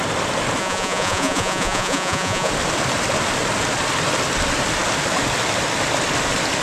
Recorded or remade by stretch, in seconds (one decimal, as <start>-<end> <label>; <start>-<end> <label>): 0.0-0.6 recorded; 0.6-2.5 remade; 2.5-6.6 recorded